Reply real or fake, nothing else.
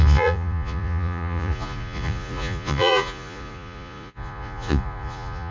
fake